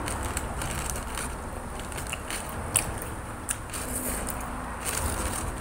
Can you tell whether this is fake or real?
real